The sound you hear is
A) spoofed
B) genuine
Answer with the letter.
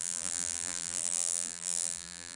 A